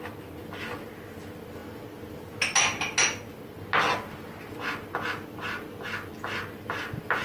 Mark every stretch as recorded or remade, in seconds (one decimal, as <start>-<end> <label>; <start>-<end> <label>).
0.0-7.2 recorded